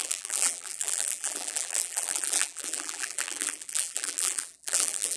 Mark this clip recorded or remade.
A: remade